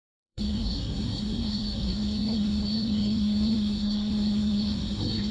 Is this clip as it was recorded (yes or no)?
no